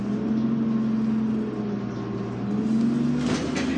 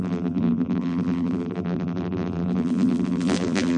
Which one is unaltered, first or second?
first